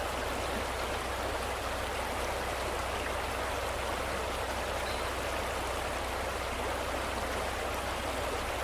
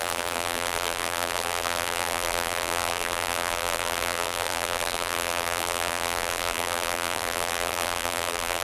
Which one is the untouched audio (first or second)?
first